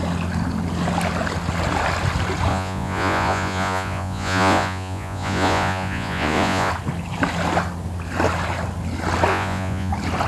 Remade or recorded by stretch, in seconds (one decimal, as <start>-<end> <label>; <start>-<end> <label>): 0.0-2.5 recorded; 2.5-6.7 remade; 6.7-9.3 recorded; 9.3-9.9 remade; 9.9-10.3 recorded